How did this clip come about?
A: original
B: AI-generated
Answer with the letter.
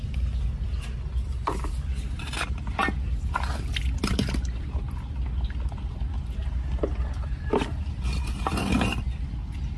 A